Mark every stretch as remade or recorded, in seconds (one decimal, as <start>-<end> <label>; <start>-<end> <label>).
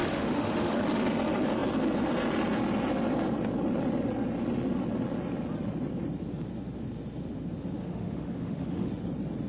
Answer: 0.0-0.8 remade; 0.8-7.8 recorded; 7.8-8.9 remade; 8.9-9.5 recorded